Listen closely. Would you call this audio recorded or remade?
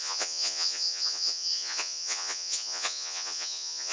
remade